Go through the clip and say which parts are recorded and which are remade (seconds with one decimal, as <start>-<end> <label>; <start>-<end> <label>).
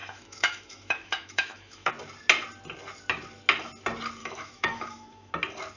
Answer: 0.0-1.9 remade; 1.9-4.2 recorded; 4.2-5.3 remade; 5.3-5.8 recorded